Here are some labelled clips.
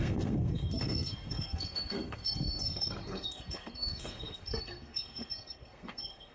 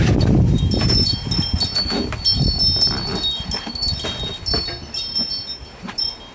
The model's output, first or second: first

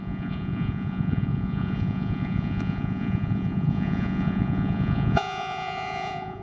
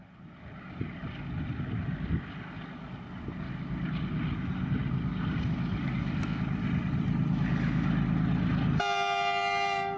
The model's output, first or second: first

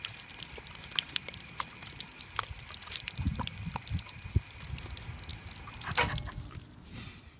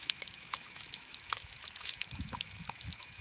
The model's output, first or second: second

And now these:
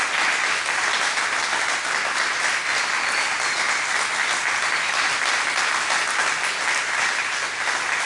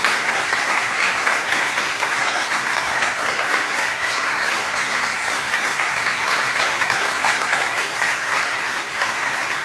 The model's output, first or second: second